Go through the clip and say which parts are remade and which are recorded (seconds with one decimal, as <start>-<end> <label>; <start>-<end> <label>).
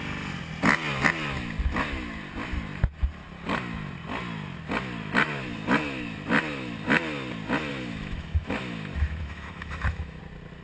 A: 0.0-7.7 recorded; 7.7-10.2 remade; 10.2-10.6 recorded